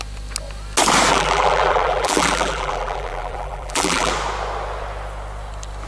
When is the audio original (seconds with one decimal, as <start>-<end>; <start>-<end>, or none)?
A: 0.0-1.1; 4.1-5.9